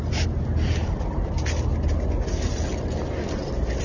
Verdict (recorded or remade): recorded